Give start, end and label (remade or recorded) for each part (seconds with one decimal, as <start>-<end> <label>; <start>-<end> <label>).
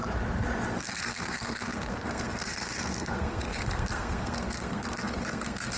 0.0-0.8 recorded; 0.8-5.8 remade